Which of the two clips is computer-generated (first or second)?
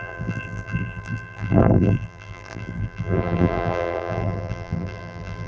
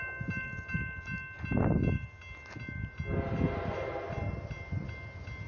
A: first